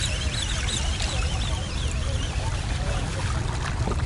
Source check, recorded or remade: recorded